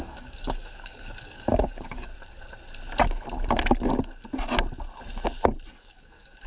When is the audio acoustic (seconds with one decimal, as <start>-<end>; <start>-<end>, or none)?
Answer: 2.1-5.7